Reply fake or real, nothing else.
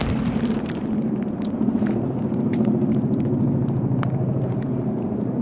fake